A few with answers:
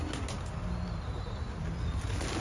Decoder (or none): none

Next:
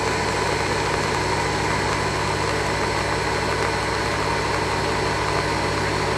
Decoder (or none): none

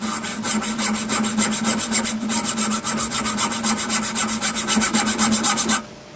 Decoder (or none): none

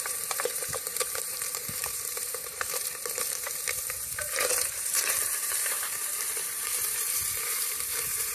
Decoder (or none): vocoder, BigVGAN v2